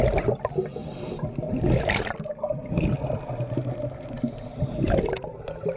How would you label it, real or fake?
real